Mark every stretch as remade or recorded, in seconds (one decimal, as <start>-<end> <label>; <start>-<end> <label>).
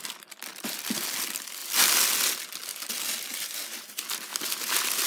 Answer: 0.0-0.5 recorded; 0.5-1.0 remade; 1.0-1.6 recorded; 1.6-2.2 remade; 2.2-2.7 recorded; 2.7-3.8 remade; 3.8-4.3 recorded; 4.3-5.1 remade